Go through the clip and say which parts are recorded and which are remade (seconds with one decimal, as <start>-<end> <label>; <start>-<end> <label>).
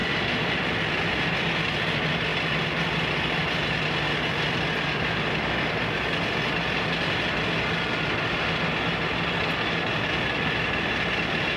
0.0-2.3 recorded; 2.3-3.0 remade; 3.0-11.6 recorded